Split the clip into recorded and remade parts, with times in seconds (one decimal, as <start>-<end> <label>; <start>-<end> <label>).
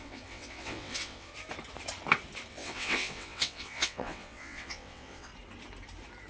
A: 0.0-1.3 remade; 1.3-2.5 recorded; 2.5-5.3 remade; 5.3-6.3 recorded